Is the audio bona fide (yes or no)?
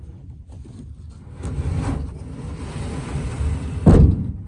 no